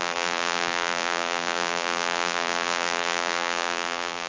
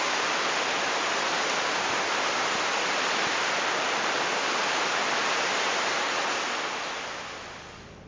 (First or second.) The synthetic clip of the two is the first